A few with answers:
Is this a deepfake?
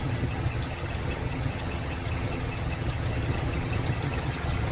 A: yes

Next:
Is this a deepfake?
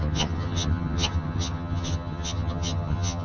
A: yes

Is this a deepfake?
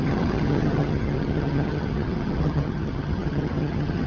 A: yes